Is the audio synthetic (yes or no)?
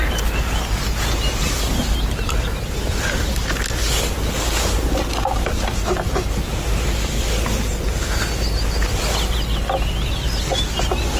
no